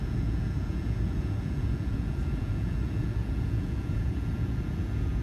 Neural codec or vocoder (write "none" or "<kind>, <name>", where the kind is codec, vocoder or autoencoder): vocoder, Vocos